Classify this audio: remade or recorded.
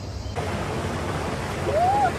recorded